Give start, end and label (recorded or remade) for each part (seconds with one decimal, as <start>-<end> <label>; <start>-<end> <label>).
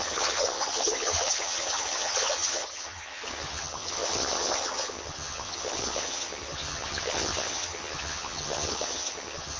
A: 0.0-9.6 remade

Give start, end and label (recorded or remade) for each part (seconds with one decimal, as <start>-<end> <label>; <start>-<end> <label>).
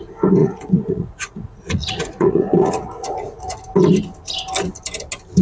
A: 0.0-0.4 recorded; 0.4-3.6 remade; 3.6-5.4 recorded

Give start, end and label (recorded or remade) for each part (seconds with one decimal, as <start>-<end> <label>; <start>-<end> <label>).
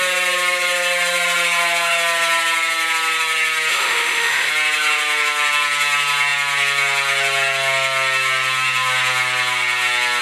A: 0.0-3.7 recorded; 3.7-4.5 remade; 4.5-10.2 recorded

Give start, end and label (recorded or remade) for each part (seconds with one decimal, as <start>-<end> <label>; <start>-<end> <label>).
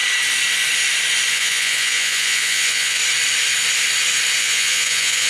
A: 0.0-1.3 recorded; 1.3-3.0 remade; 3.0-4.4 recorded; 4.4-5.3 remade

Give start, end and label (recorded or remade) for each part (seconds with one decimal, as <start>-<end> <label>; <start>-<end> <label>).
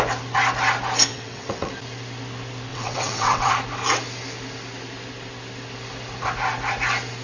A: 0.0-1.1 recorded; 1.1-1.7 remade; 1.7-2.7 recorded; 2.7-3.5 remade; 3.5-7.2 recorded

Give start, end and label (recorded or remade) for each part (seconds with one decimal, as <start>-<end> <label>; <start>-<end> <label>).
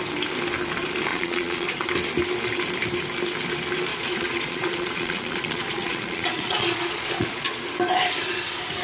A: 0.0-1.1 recorded; 1.1-1.9 remade; 1.9-3.9 recorded; 3.9-7.6 remade; 7.6-8.8 recorded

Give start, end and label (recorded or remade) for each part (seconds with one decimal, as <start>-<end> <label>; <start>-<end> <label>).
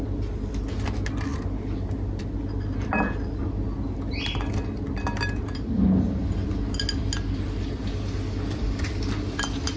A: 0.0-9.8 recorded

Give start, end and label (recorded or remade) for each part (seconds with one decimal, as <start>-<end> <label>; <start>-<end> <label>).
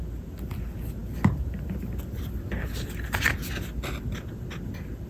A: 0.0-5.1 recorded